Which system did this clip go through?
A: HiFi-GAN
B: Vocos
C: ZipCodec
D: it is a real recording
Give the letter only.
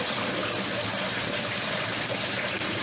D